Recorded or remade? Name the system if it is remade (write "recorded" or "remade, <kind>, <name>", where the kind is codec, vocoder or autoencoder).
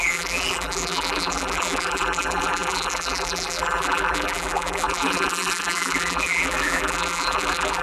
remade, vocoder, BigVGAN v2